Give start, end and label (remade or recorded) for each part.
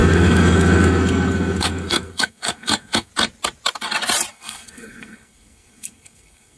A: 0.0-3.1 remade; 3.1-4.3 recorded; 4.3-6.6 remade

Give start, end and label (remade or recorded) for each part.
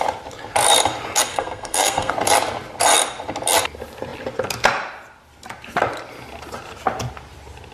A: 0.0-1.3 recorded; 1.3-2.1 remade; 2.1-7.7 recorded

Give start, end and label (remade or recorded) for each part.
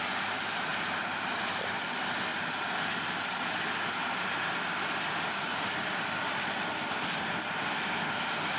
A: 0.0-0.7 remade; 0.7-1.8 recorded; 1.8-2.3 remade; 2.3-6.2 recorded; 6.2-8.6 remade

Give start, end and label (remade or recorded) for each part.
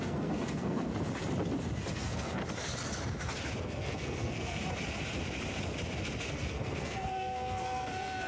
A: 0.0-0.9 remade; 0.9-1.9 recorded; 1.9-2.4 remade; 2.4-3.6 recorded; 3.6-4.6 remade; 4.6-6.3 recorded; 6.3-8.3 remade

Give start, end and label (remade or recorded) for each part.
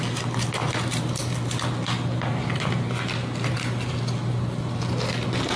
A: 0.0-5.6 recorded